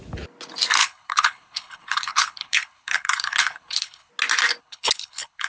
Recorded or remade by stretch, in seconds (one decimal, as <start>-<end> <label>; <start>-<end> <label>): 0.0-0.8 recorded; 0.8-4.1 remade; 4.1-4.6 recorded; 4.6-5.5 remade